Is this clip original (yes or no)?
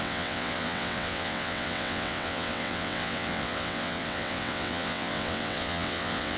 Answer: no